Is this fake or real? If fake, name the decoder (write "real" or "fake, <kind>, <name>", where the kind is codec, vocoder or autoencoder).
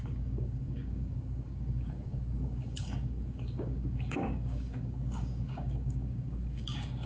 fake, codec, DAC